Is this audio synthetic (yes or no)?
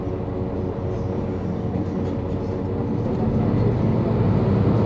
no